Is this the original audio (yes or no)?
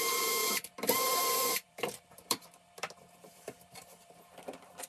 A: no